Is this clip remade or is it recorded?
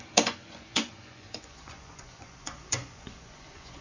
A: remade